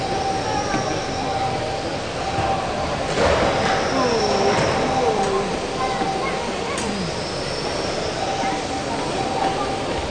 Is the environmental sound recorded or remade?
recorded